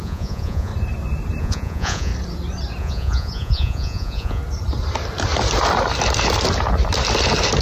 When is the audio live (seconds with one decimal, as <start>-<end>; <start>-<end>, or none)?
0.7-1.4; 2.1-2.8; 4.4-7.6